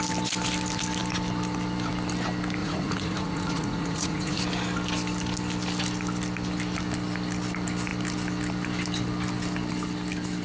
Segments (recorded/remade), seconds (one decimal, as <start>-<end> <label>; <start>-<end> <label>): 0.0-2.6 recorded; 2.6-4.4 remade; 4.4-10.4 recorded

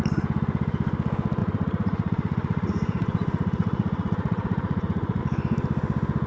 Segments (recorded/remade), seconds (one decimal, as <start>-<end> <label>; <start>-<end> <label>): 0.0-1.4 recorded; 1.4-5.2 remade; 5.2-6.3 recorded

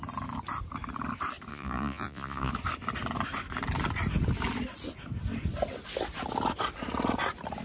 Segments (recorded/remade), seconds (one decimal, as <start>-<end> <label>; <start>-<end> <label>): 0.0-1.5 recorded; 1.5-2.5 remade; 2.5-7.6 recorded

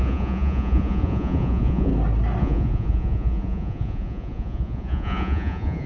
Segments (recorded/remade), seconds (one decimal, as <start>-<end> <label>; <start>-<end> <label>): 0.0-1.9 remade; 1.9-2.4 recorded; 2.4-5.9 remade

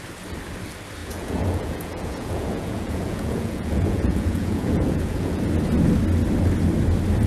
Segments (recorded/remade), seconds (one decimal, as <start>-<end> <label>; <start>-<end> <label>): 0.0-1.0 recorded; 1.0-5.4 remade; 5.4-7.3 recorded

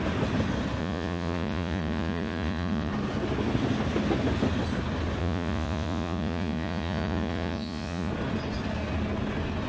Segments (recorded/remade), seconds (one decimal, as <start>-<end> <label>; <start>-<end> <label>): 0.0-0.8 recorded; 0.8-2.9 remade; 2.9-5.2 recorded; 5.2-8.1 remade; 8.1-9.7 recorded